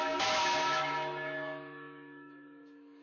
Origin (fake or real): fake